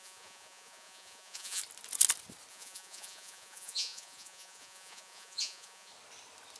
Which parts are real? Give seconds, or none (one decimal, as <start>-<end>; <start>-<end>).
1.6-2.5; 5.9-6.6